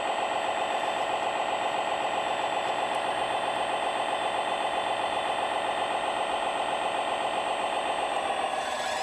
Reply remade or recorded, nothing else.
recorded